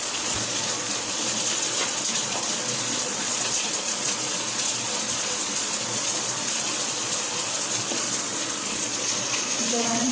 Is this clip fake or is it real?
fake